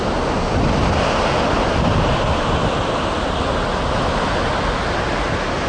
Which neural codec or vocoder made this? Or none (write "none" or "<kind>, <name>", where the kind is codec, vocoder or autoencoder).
none